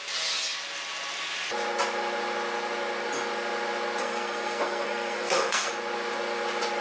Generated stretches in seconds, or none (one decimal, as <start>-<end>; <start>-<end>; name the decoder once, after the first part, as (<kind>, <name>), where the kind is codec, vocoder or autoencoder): 4.0-5.7 (codec, SNAC)